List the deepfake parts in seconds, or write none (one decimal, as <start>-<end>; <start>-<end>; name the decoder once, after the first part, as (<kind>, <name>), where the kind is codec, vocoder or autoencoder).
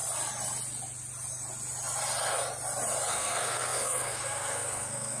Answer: 3.1-5.2 (codec, SNAC)